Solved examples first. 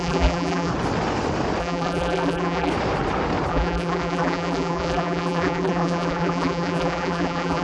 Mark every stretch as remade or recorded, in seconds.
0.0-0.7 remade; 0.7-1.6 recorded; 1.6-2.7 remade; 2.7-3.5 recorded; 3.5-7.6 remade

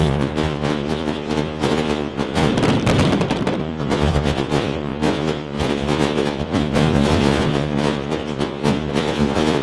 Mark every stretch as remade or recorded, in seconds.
0.0-2.5 remade; 2.5-3.6 recorded; 3.6-9.6 remade